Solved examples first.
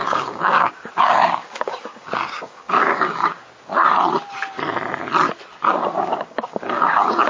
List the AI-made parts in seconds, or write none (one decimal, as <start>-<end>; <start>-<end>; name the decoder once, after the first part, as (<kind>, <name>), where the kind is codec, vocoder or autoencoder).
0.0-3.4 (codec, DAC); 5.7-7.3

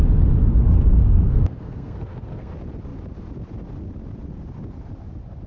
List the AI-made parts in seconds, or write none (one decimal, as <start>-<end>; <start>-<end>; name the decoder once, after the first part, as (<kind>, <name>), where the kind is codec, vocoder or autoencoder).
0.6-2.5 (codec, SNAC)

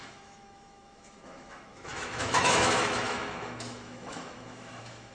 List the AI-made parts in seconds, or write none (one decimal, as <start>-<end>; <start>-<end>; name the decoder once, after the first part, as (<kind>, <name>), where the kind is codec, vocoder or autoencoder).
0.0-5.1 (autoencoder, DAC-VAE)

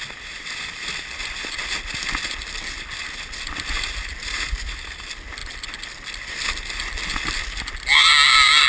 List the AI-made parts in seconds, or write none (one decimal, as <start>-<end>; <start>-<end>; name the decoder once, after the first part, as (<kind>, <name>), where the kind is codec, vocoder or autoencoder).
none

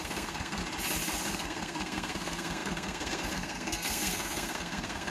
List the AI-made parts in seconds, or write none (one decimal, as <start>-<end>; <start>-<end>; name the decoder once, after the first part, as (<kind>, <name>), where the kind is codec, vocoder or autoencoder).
0.0-0.6 (codec, SNAC); 1.3-5.1

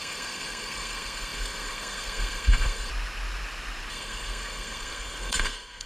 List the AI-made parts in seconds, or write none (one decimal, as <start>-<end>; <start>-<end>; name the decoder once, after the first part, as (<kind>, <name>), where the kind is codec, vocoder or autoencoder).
0.0-2.9 (codec, SNAC); 3.9-5.9

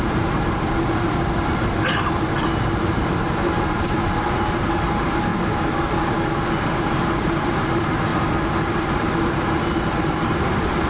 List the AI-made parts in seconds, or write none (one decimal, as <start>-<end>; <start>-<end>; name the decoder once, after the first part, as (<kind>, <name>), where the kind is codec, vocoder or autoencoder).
0.0-5.3 (vocoder, BigVGAN v2); 6.8-8.1; 8.8-10.9

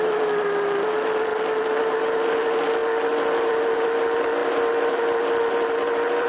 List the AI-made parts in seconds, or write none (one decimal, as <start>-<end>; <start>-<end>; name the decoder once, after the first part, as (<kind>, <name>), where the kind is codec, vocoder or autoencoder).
none